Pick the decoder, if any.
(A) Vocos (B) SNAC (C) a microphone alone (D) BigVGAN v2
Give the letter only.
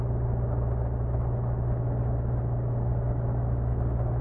C